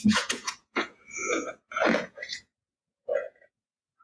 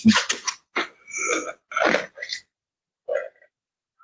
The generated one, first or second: first